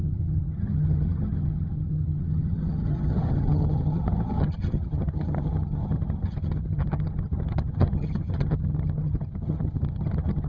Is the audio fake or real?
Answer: fake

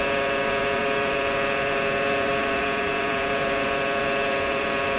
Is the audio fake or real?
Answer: fake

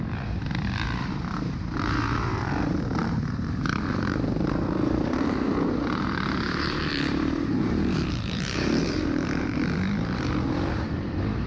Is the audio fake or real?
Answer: fake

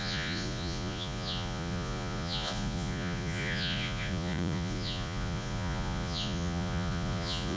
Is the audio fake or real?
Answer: fake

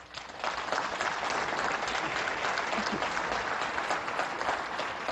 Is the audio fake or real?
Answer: real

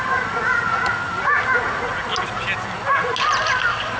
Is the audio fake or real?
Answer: real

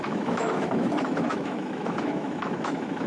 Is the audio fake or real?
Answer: fake